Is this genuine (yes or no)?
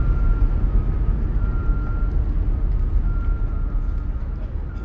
yes